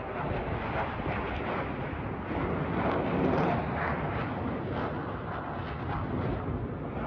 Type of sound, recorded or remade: recorded